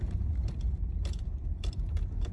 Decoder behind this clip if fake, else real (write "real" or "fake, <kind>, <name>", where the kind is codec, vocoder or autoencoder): fake, vocoder, BigVGAN v2